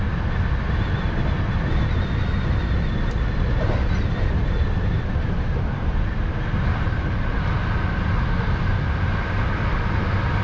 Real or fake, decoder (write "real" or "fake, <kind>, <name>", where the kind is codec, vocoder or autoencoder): real